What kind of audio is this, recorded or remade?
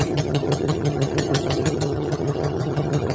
remade